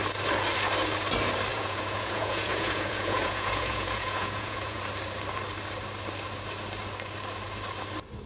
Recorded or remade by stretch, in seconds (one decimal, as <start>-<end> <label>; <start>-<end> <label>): 0.0-1.5 recorded; 1.5-4.8 remade; 4.8-8.3 recorded